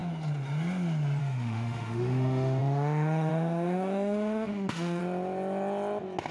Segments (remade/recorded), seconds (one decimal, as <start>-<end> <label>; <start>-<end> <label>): 0.0-1.2 recorded; 1.2-5.0 remade; 5.0-6.3 recorded